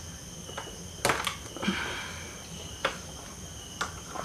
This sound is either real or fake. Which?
real